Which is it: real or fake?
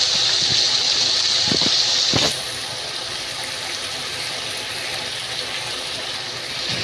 real